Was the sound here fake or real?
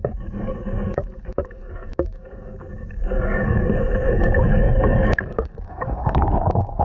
fake